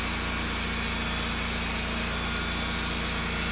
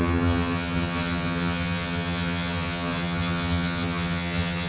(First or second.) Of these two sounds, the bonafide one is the first